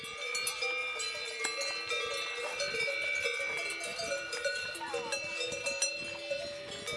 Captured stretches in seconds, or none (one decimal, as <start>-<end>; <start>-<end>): 0.0-0.8; 1.4-3.9; 4.9-7.0